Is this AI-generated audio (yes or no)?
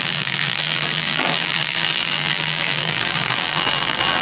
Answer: yes